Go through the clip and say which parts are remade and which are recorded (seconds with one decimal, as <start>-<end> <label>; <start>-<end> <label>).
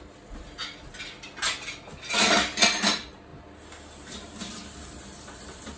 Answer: 0.0-5.8 recorded